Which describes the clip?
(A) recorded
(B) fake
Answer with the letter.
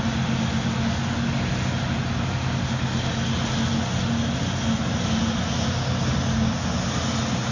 A